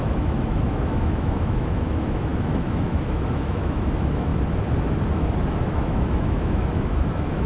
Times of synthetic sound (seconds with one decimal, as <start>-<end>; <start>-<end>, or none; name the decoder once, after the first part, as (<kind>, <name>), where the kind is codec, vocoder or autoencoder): 0.0-4.3 (autoencoder, DAC-VAE); 5.6-7.5